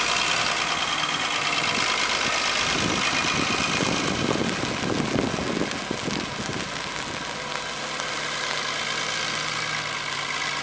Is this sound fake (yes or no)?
no